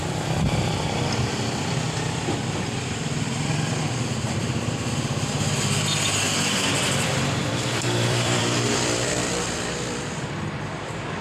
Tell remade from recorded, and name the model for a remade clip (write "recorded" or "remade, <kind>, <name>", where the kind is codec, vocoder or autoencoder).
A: remade, vocoder, BigVGAN v2